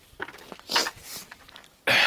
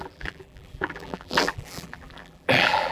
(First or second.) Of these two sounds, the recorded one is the first